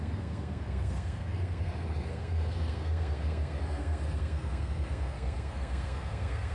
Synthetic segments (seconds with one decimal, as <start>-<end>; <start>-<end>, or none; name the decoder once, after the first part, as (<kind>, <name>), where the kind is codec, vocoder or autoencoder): 0.0-6.5 (codec, SNAC)